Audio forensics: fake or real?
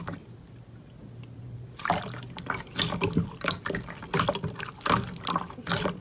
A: real